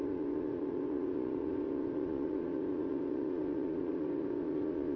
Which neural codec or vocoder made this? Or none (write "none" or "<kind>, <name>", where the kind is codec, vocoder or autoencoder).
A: vocoder, Vocos